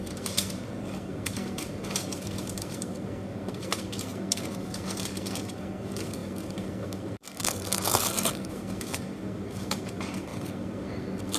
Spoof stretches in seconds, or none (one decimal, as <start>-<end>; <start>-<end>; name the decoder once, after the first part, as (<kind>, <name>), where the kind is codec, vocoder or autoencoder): 0.0-11.4 (codec, SNAC)